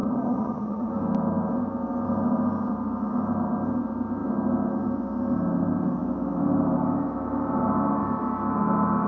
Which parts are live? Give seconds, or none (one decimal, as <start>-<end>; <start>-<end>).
0.9-9.1